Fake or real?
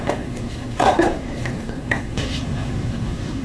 fake